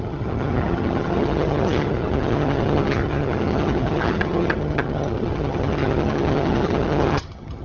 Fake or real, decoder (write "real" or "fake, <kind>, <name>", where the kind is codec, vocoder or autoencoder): fake, vocoder, HiFi-GAN